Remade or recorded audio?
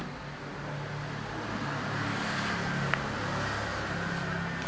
recorded